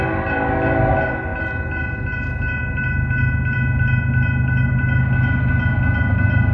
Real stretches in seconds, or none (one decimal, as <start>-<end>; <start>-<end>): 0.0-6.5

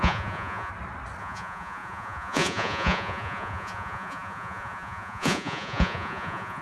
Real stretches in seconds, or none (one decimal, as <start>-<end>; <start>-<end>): 0.7-1.2

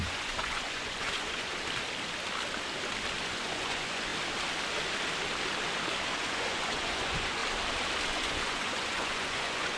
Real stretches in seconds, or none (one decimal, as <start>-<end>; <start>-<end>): 1.5-3.2; 4.1-6.2; 7.4-8.1